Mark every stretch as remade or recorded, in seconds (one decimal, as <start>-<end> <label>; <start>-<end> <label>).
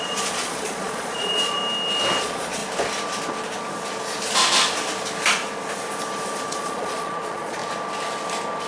0.0-1.6 remade; 1.6-2.2 recorded; 2.2-2.6 remade; 2.6-6.5 recorded; 6.5-7.6 remade; 7.6-8.7 recorded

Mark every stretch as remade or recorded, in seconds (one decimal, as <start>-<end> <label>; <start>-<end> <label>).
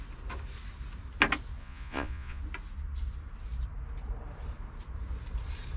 0.0-1.6 recorded; 1.6-2.4 remade; 2.4-5.8 recorded